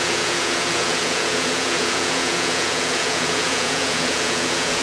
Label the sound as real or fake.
fake